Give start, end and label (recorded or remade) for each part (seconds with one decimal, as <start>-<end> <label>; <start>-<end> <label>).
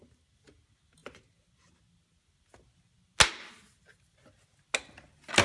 0.0-5.4 recorded